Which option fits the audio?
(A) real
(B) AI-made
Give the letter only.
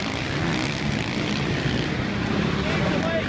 A